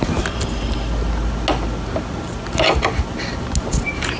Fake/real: real